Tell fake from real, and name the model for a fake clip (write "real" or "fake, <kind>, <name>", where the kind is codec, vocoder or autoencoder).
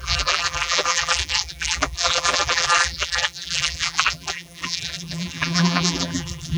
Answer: fake, vocoder, BigVGAN v2